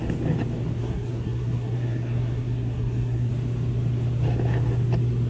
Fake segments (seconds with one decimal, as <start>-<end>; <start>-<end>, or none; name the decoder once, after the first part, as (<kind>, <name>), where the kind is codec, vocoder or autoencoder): 0.8-3.3 (codec, SNAC)